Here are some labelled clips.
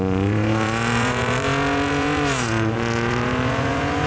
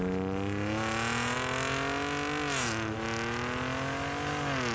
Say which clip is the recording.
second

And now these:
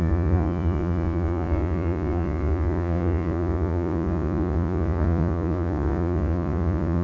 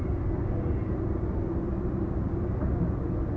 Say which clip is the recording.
second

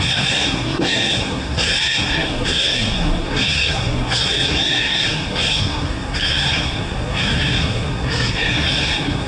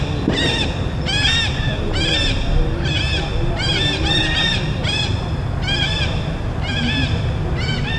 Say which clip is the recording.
second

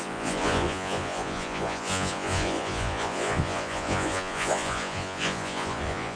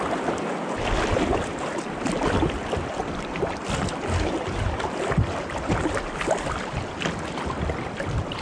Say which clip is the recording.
second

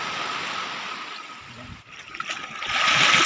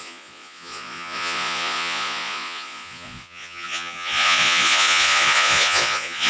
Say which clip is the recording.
first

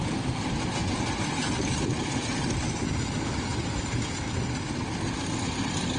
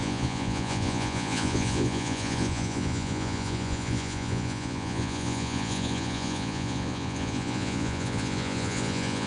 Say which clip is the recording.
first